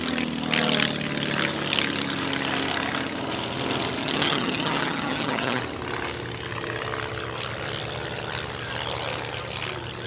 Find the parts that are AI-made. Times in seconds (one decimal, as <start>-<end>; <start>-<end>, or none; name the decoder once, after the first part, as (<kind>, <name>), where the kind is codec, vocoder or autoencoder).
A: 4.0-5.6 (vocoder, HiFi-GAN)